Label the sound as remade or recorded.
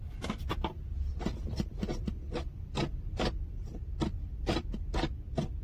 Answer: recorded